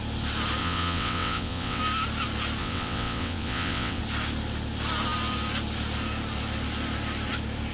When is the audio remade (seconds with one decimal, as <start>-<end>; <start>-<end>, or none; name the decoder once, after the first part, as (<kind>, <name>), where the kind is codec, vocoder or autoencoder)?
0.6-1.8 (vocoder, WaveNeXt); 2.6-4.0